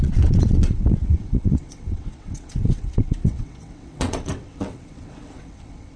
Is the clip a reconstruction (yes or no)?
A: yes